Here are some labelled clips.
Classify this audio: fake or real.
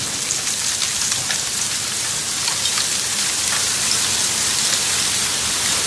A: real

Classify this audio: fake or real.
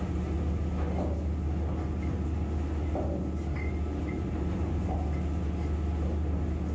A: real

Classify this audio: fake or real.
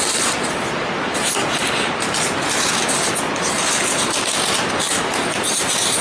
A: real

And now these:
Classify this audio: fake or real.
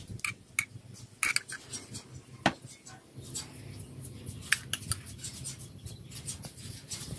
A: real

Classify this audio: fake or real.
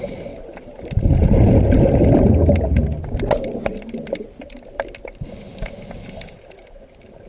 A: real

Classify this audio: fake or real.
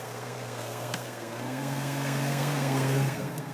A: fake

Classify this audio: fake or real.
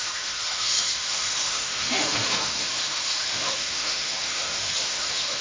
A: fake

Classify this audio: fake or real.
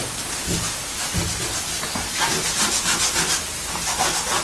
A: real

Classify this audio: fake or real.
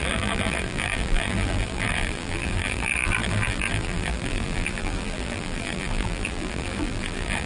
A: fake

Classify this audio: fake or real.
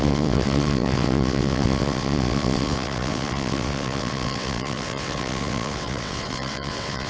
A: fake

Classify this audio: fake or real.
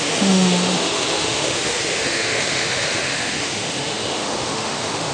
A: fake